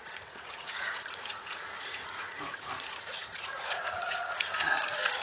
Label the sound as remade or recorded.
remade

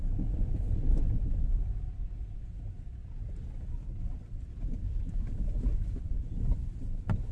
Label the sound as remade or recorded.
recorded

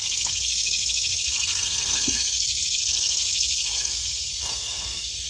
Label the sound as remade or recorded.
remade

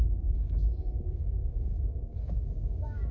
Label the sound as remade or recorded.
remade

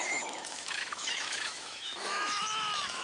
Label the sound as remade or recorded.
remade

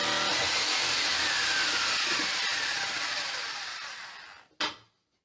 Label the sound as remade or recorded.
recorded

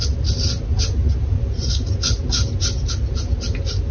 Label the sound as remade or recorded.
recorded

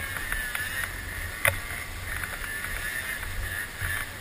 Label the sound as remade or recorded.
recorded